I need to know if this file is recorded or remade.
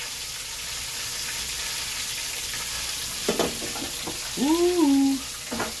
recorded